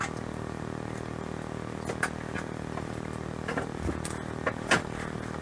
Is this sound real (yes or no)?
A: yes